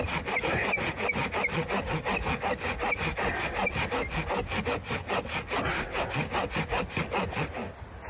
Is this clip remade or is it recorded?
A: recorded